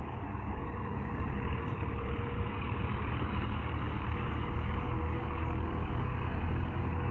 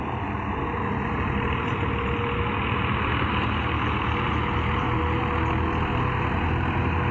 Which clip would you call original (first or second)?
second